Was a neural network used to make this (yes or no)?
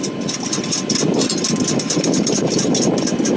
no